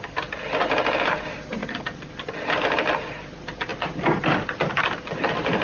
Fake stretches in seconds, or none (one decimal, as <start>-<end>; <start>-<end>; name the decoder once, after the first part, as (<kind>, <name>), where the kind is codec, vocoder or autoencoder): none